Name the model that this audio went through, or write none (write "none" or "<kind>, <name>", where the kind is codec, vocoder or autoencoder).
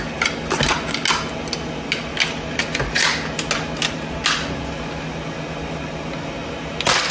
none